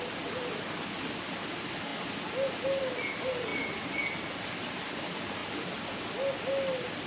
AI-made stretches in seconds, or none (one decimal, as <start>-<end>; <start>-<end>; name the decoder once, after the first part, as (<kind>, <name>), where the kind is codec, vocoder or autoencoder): none